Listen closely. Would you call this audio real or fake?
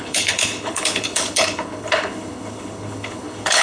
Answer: fake